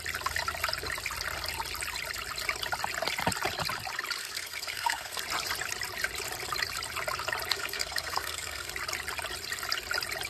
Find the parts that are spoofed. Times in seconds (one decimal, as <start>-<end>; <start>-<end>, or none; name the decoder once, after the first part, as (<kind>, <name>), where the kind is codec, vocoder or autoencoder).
4.2-5.2 (codec, SNAC); 7.5-8.7